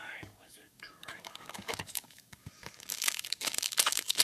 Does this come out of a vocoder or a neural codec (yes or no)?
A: yes